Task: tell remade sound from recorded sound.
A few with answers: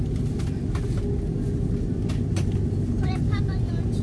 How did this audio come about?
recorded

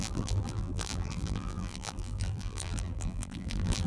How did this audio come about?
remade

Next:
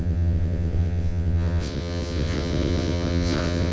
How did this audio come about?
remade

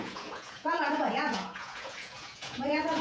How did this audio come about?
remade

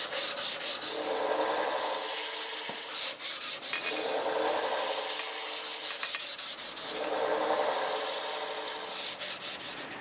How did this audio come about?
recorded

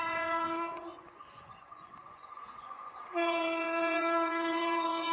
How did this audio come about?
remade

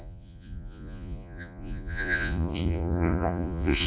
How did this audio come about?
remade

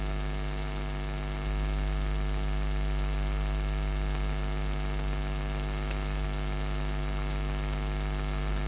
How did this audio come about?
recorded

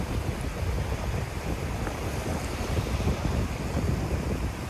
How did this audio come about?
recorded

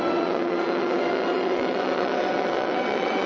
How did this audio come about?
remade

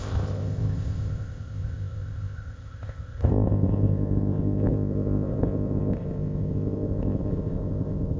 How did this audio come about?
remade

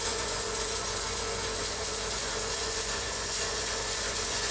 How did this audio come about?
remade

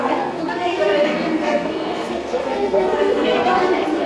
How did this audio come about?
remade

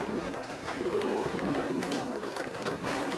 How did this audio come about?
remade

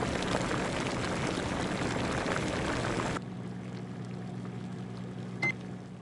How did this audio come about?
recorded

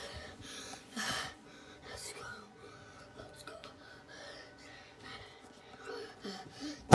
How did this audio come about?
remade